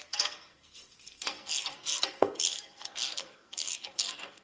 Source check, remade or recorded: remade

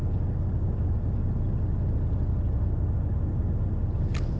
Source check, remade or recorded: recorded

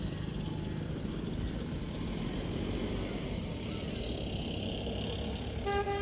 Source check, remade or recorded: recorded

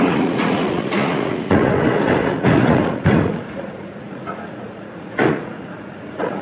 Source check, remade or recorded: remade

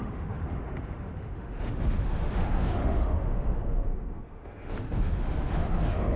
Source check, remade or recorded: remade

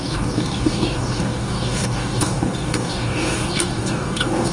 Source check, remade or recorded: remade